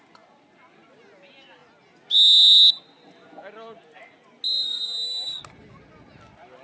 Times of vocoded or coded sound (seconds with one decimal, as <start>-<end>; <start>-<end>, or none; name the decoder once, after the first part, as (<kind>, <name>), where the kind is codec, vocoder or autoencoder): none